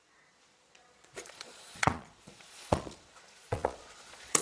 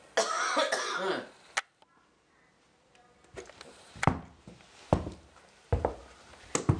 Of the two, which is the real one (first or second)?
second